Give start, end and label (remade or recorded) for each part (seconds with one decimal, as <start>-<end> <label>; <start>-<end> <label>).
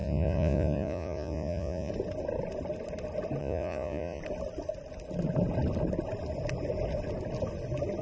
0.0-1.9 remade; 1.9-3.4 recorded; 3.4-4.2 remade; 4.2-8.0 recorded